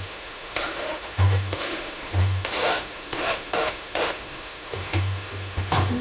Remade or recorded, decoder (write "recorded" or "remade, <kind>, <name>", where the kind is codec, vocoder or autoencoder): remade, autoencoder, DAC-VAE